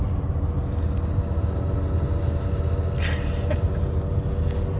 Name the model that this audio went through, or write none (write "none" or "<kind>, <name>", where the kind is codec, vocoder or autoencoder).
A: none